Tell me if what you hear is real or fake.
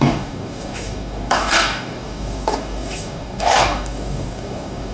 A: fake